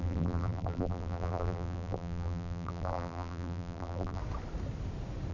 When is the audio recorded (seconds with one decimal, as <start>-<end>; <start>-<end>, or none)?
4.2-5.3